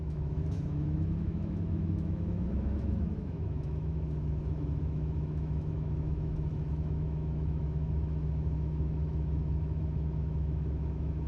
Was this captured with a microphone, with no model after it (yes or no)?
no